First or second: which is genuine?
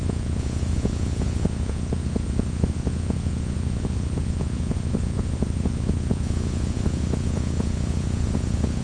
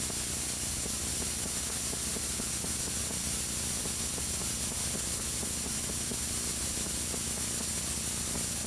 second